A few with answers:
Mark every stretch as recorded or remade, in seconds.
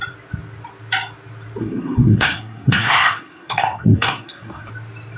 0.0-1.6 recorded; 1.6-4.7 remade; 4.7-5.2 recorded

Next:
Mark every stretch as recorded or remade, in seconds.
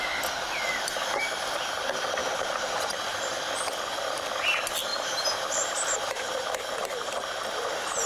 0.0-2.2 recorded; 2.2-3.2 remade; 3.2-4.9 recorded; 4.9-8.1 remade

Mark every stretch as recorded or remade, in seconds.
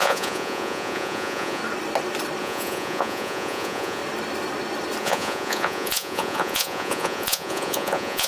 0.0-1.6 remade; 1.6-2.4 recorded; 2.4-4.0 remade; 4.0-5.0 recorded; 5.0-8.3 remade